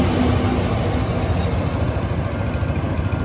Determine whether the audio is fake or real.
real